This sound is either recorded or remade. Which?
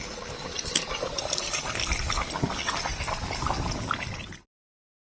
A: recorded